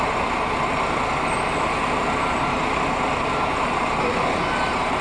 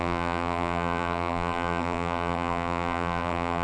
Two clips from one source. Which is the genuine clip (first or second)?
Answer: first